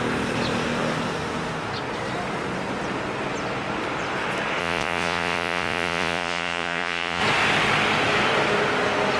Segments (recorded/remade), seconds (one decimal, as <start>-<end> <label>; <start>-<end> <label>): 0.0-4.6 recorded; 4.6-7.2 remade; 7.2-9.2 recorded

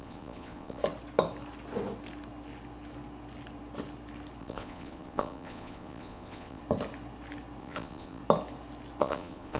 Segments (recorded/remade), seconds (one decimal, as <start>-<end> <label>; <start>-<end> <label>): 0.0-0.8 remade; 0.8-4.4 recorded; 4.4-6.6 remade; 6.6-7.6 recorded; 7.6-8.2 remade; 8.2-9.0 recorded; 9.0-9.6 remade

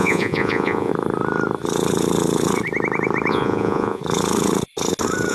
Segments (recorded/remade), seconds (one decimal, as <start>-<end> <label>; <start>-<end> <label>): 0.0-0.9 remade; 0.9-3.3 recorded; 3.3-4.0 remade; 4.0-5.3 recorded

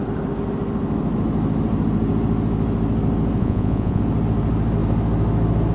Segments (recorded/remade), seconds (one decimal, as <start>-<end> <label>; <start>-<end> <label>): 0.0-3.4 recorded; 3.4-4.0 remade; 4.0-5.7 recorded

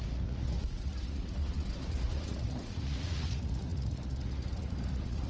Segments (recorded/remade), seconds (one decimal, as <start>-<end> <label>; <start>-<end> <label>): 0.0-5.3 remade

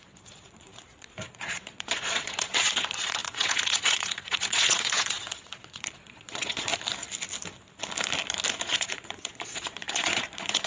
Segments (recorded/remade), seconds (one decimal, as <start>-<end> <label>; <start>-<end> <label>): 0.0-6.7 remade; 6.7-8.6 recorded; 8.6-10.7 remade

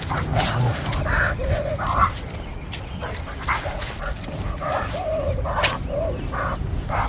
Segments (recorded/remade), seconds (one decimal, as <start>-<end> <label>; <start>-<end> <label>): 0.0-7.1 recorded

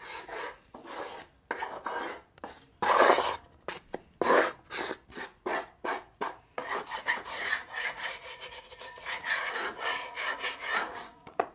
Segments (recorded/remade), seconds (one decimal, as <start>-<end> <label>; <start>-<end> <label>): 0.0-0.8 remade; 0.8-5.1 recorded; 5.1-11.5 remade